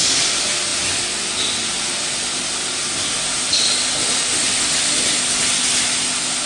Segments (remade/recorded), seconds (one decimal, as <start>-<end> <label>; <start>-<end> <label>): 0.0-6.5 recorded